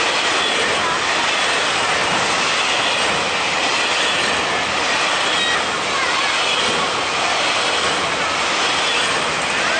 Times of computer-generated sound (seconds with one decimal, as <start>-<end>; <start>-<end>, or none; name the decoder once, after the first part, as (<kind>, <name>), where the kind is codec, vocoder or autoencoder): none